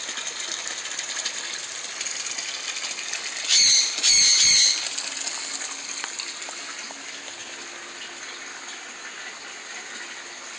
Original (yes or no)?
yes